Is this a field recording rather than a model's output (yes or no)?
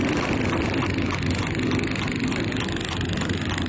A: yes